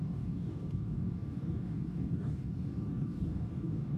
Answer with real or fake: fake